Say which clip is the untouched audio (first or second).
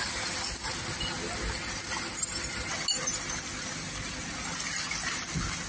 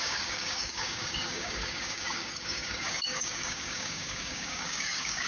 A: first